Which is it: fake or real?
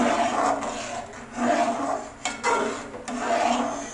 real